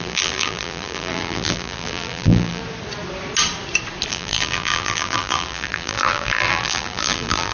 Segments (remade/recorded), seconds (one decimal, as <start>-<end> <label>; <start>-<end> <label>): 0.0-2.6 remade; 2.6-4.1 recorded; 4.1-7.5 remade